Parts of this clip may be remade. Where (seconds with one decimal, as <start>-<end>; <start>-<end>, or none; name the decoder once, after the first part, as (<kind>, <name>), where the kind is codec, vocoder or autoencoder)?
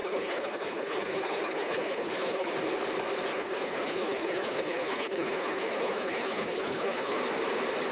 0.0-2.5 (codec, HILCodec); 3.3-7.2